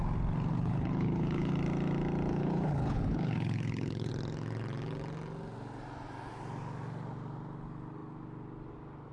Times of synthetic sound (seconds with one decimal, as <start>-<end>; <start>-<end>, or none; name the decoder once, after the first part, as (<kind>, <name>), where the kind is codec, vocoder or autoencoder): 0.5-1.5 (codec, HILCodec); 2.3-4.1